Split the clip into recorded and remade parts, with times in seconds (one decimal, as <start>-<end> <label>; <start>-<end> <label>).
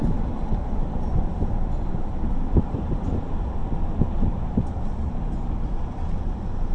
0.0-3.6 remade; 3.6-4.3 recorded; 4.3-6.7 remade